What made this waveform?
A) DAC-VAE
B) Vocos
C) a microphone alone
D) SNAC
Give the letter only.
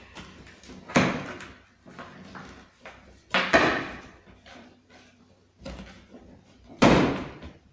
C